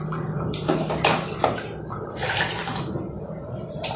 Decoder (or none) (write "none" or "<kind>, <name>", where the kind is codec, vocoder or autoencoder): vocoder, BigVGAN v2